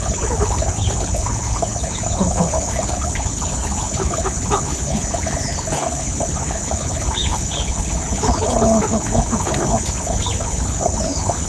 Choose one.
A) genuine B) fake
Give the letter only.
B